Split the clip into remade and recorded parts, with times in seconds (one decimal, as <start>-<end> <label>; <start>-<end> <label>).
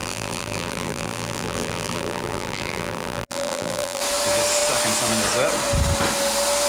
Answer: 0.0-4.0 remade; 4.0-6.7 recorded